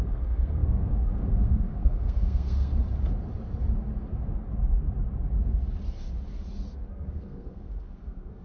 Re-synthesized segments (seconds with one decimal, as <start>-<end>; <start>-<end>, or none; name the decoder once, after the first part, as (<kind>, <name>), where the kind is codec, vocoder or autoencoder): 0.0-2.7 (codec, SNAC); 6.9-8.4